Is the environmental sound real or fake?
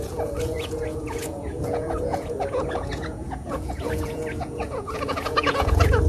fake